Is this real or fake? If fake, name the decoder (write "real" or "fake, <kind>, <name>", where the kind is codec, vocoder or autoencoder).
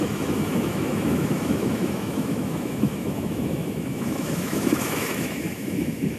fake, autoencoder, DAC-VAE